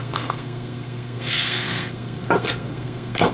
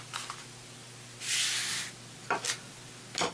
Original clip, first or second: second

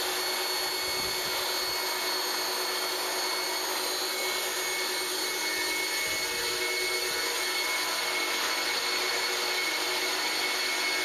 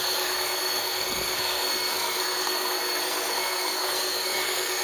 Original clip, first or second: first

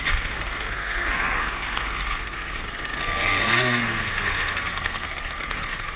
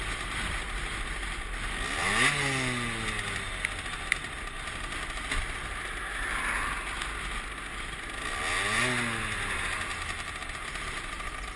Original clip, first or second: second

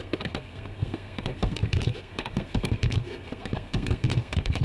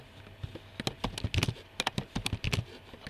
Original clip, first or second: second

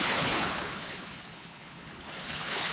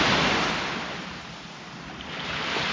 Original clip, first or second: second